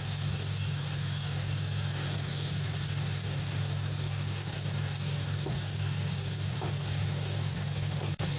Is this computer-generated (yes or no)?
yes